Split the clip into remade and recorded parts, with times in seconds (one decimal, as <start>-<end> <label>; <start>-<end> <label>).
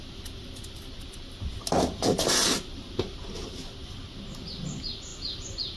0.0-5.8 recorded